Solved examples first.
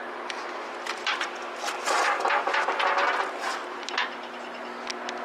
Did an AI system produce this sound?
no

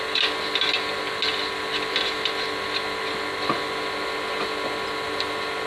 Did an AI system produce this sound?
no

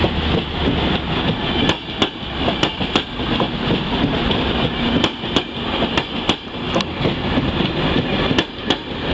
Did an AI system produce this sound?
no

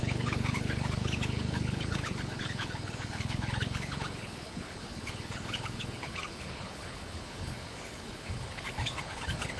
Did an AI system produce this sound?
yes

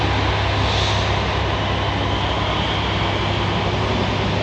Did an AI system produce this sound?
no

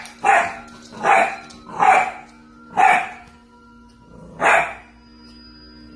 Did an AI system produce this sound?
no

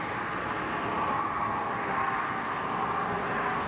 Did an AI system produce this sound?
no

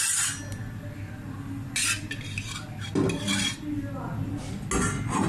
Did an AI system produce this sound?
no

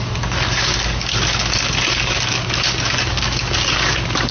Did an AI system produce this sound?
yes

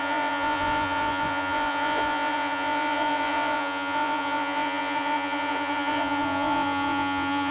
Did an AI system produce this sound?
yes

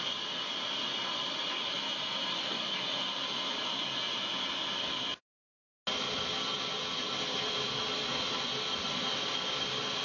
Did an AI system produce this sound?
no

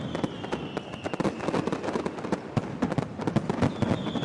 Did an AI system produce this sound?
no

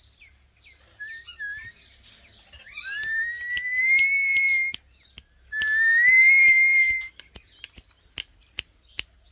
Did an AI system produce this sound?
no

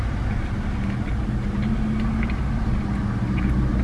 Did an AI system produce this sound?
no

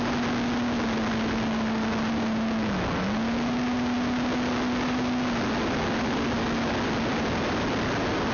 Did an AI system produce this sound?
no